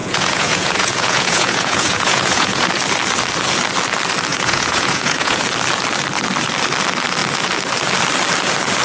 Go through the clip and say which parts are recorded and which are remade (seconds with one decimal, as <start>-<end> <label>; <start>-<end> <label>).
0.0-2.7 remade; 2.7-4.3 recorded; 4.3-5.4 remade; 5.4-8.8 recorded